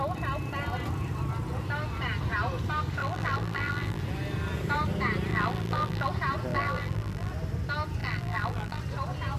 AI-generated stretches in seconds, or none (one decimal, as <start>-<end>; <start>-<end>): 3.0-4.0; 5.3-6.1; 6.5-7.3; 8.0-8.8